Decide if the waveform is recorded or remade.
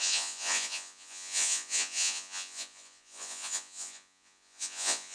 remade